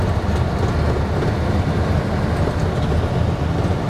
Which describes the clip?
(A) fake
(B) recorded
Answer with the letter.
B